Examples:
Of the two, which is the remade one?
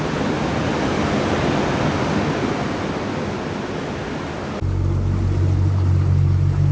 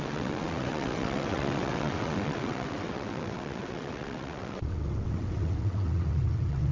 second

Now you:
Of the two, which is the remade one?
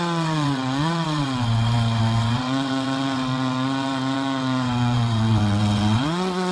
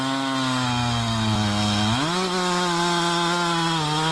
first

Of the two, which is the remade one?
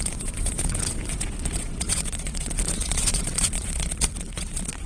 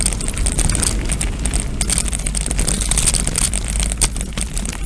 first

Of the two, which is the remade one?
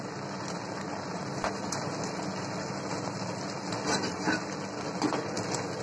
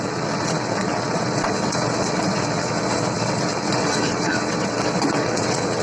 second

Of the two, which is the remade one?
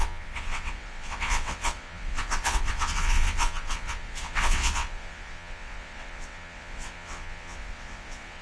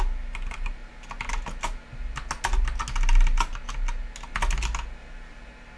first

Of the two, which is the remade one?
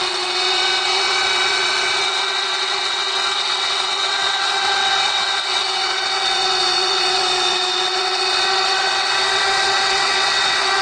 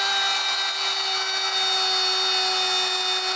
first